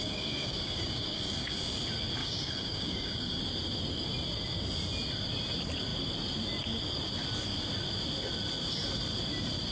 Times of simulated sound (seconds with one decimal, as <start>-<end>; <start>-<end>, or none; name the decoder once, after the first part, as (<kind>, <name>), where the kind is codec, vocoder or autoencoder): 0.0-1.8 (codec, DAC); 2.2-3.4